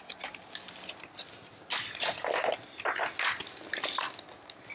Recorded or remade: recorded